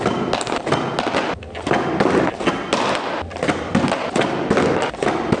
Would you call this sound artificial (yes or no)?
no